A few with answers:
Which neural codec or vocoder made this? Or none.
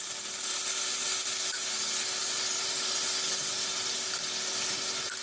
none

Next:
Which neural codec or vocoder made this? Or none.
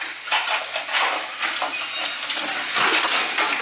none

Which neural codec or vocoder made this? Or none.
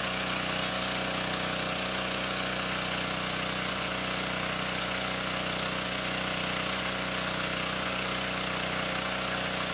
vocoder, Vocos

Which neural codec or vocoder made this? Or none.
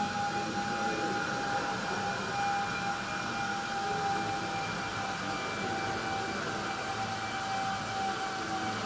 none